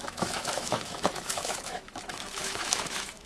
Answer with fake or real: fake